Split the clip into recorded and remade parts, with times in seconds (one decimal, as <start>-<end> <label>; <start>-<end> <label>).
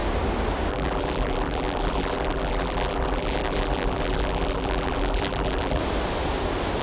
0.0-0.7 recorded; 0.7-5.8 remade; 5.8-6.8 recorded